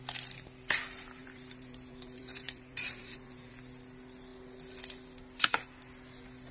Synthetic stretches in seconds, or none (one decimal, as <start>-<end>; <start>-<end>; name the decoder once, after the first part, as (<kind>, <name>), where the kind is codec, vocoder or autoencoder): 1.2-3.5 (vocoder, BigVGAN v2)